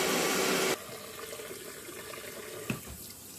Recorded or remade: recorded